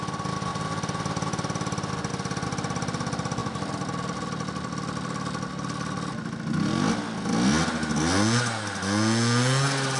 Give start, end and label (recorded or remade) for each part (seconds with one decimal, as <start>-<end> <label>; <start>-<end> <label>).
0.0-10.0 recorded